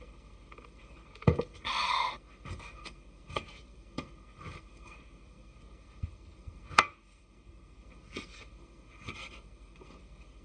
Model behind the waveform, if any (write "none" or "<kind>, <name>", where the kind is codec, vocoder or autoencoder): codec, SNAC